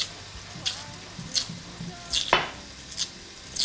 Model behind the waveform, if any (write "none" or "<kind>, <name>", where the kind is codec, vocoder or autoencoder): none